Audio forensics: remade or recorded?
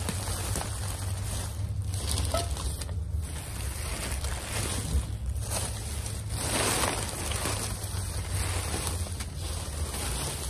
recorded